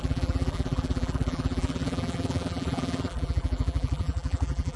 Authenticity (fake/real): fake